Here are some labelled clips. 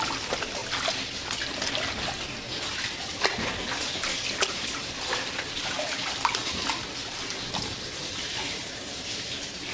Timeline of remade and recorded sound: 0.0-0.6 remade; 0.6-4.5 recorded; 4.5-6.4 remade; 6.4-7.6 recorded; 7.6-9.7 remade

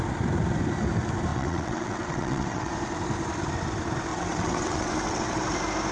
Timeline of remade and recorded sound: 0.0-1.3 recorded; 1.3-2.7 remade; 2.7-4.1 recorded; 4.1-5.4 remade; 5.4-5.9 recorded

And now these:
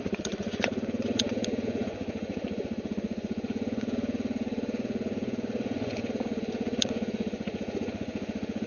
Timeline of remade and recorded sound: 0.0-8.7 remade